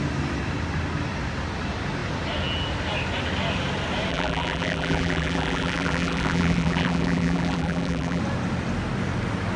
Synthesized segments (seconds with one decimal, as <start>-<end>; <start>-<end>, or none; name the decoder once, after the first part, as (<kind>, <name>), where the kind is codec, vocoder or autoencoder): 4.1-8.2 (vocoder, BigVGAN v2)